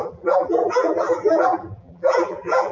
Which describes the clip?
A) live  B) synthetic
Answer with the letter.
B